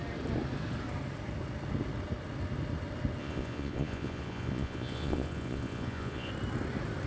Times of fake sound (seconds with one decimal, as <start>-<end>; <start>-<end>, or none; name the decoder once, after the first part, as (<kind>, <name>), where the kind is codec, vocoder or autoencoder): 3.2-6.3 (vocoder, Vocos)